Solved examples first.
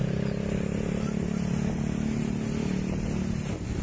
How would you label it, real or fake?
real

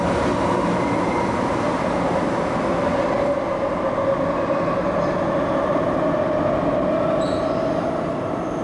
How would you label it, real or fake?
real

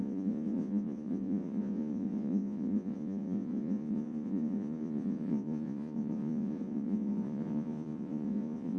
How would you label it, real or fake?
fake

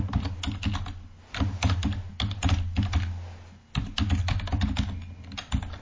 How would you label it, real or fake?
real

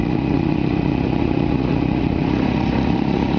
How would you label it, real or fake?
fake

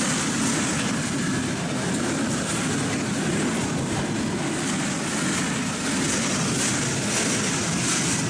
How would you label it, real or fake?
real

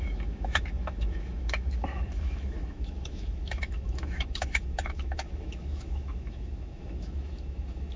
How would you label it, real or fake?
fake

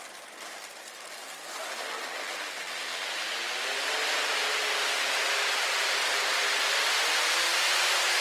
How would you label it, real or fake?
real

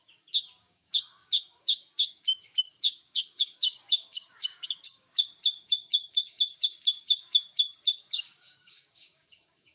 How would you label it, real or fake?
fake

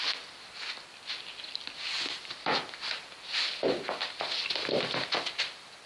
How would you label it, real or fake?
real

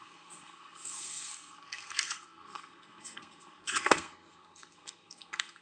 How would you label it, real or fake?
fake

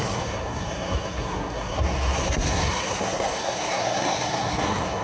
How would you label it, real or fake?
fake